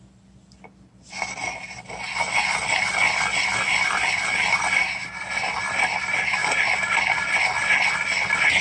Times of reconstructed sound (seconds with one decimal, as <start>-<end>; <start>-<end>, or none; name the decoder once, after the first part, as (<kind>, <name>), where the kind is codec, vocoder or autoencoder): none